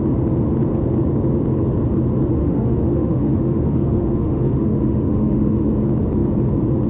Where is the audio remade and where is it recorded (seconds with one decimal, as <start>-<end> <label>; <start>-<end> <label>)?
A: 0.0-2.4 recorded; 2.4-5.7 remade; 5.7-6.9 recorded